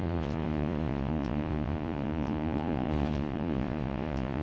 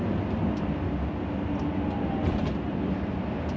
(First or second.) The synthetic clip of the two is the first